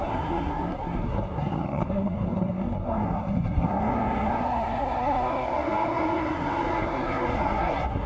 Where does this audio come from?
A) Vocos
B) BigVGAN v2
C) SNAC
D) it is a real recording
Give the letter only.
C